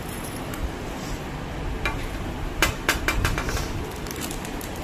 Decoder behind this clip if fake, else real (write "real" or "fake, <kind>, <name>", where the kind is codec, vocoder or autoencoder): real